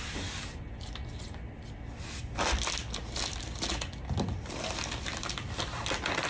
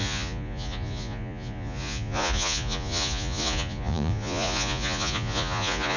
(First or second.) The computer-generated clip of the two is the second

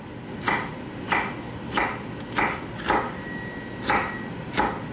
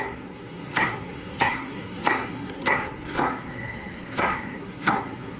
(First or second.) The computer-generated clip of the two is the second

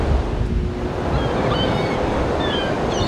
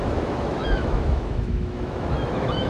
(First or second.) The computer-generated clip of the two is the second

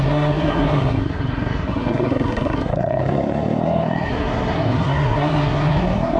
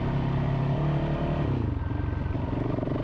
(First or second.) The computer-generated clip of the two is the first